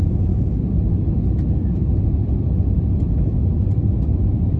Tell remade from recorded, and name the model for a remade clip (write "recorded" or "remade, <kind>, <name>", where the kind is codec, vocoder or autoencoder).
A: recorded